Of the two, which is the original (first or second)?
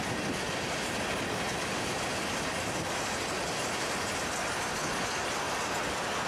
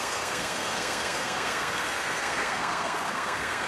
first